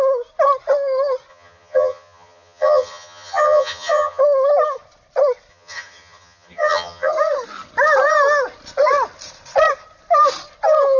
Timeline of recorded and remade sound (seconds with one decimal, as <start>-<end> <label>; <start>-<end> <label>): 0.0-1.3 recorded; 1.3-4.2 remade; 4.2-5.5 recorded; 5.5-7.1 remade; 7.1-11.0 recorded